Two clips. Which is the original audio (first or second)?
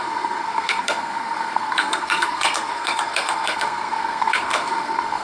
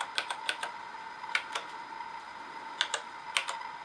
second